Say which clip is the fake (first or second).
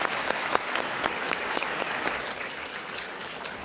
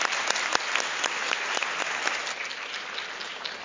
first